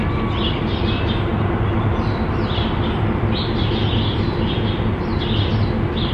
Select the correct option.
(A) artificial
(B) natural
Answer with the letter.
B